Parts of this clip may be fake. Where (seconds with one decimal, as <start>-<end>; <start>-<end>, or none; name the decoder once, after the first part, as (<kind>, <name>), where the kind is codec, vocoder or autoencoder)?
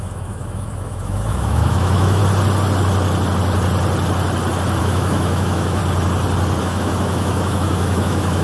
0.0-2.2 (autoencoder, DAC-VAE); 4.8-5.8; 6.6-8.4